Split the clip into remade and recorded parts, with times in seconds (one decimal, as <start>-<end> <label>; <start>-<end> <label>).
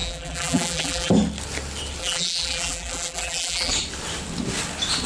0.0-1.1 remade; 1.1-2.0 recorded; 2.0-3.7 remade; 3.7-5.1 recorded